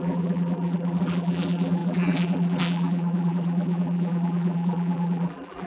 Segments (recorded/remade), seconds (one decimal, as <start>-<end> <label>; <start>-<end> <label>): 0.0-5.7 remade